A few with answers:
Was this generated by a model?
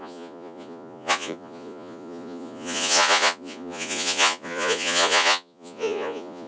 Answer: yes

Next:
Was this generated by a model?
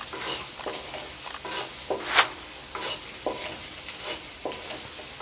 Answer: no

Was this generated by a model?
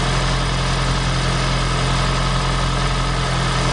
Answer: no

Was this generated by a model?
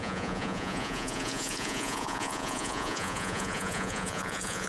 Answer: yes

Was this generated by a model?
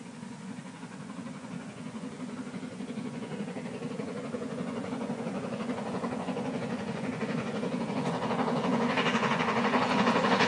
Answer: yes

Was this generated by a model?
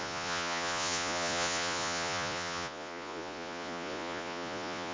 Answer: yes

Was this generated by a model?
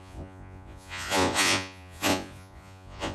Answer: yes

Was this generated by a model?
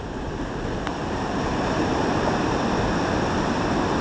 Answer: no